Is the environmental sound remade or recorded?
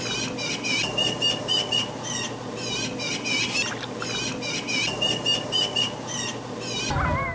recorded